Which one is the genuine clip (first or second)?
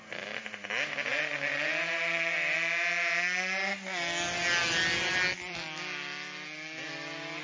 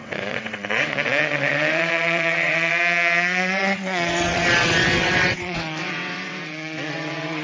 first